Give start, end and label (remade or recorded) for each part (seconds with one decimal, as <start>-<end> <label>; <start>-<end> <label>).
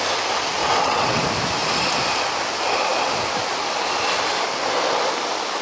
0.0-0.6 recorded; 0.6-1.2 remade; 1.2-5.6 recorded